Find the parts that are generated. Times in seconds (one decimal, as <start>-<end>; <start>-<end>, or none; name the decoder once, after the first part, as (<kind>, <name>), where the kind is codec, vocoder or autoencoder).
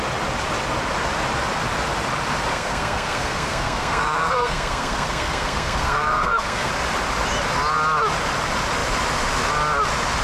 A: 2.5-6.7 (codec, SNAC)